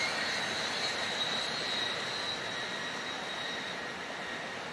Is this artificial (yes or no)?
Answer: no